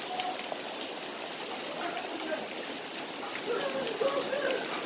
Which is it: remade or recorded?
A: recorded